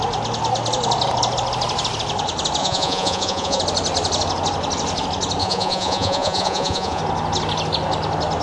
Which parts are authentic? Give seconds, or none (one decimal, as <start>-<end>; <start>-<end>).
0.0-2.6; 3.6-5.4; 7.0-8.4